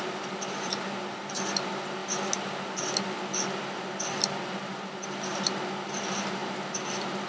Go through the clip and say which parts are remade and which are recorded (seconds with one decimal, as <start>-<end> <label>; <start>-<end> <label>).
0.0-7.3 recorded